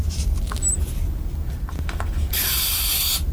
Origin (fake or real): real